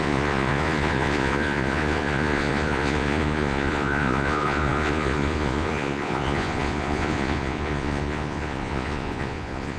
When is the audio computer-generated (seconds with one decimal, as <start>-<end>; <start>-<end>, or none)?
0.0-9.8